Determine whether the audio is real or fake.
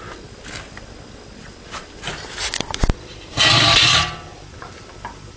real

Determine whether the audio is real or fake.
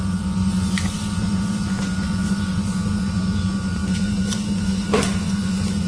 fake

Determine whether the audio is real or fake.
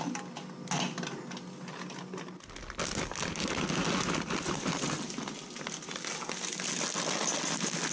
real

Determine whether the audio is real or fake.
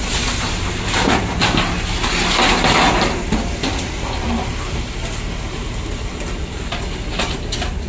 real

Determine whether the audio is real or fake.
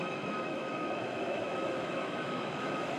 fake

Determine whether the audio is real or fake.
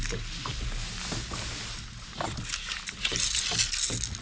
real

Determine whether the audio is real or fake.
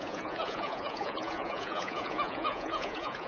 fake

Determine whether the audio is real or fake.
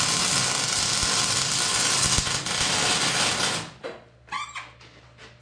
real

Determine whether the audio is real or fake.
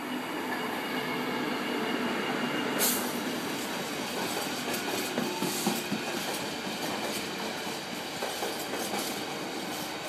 real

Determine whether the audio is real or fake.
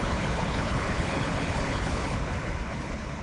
fake